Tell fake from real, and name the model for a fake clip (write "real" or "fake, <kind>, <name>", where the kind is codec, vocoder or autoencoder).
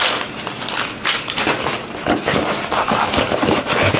real